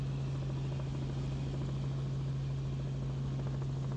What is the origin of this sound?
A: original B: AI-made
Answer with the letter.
A